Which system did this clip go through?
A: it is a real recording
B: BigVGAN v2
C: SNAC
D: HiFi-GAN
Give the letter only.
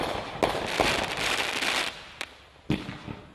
A